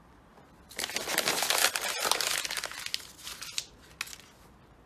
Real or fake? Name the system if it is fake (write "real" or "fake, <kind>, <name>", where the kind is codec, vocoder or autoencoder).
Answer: real